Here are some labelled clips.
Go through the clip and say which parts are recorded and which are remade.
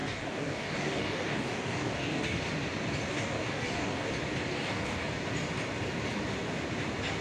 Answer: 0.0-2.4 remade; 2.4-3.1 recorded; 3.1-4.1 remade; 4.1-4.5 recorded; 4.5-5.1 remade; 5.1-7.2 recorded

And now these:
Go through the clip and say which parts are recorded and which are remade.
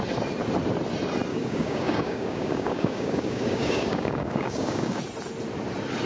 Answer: 0.0-1.3 recorded; 1.3-5.0 remade; 5.0-6.1 recorded